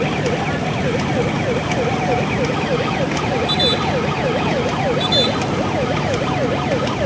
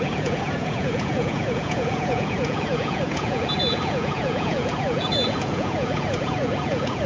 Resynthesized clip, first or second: second